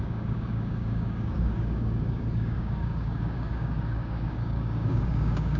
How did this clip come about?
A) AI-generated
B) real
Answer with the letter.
A